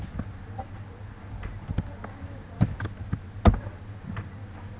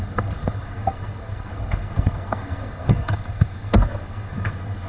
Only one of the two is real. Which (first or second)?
first